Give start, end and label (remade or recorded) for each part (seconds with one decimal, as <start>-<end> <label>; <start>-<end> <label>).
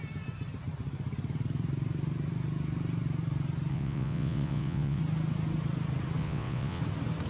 0.0-3.7 recorded; 3.7-5.0 remade; 5.0-6.2 recorded; 6.2-6.8 remade; 6.8-7.3 recorded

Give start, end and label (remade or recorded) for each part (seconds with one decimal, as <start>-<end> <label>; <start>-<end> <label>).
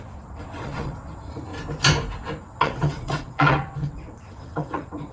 0.0-1.5 remade; 1.5-2.4 recorded; 2.4-5.1 remade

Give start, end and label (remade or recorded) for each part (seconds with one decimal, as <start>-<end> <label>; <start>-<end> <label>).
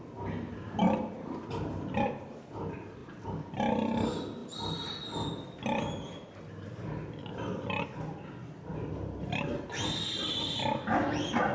0.0-11.5 recorded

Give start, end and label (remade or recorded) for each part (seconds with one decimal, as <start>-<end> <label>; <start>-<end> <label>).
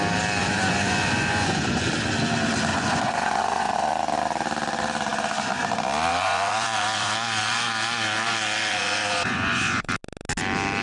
0.0-0.4 recorded; 0.4-1.9 remade; 1.9-2.7 recorded; 2.7-3.9 remade; 3.9-6.1 recorded; 6.1-9.9 remade; 9.9-10.8 recorded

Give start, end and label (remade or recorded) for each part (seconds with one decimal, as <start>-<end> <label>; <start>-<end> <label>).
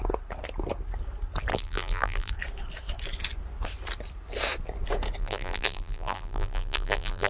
0.0-1.5 recorded; 1.5-2.3 remade; 2.3-5.2 recorded; 5.2-7.3 remade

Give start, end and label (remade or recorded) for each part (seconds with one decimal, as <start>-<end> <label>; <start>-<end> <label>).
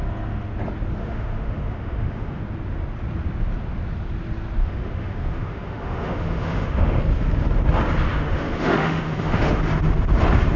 0.0-1.0 recorded; 1.0-2.4 remade; 2.4-4.6 recorded; 4.6-7.0 remade; 7.0-8.1 recorded; 8.1-9.6 remade; 9.6-10.6 recorded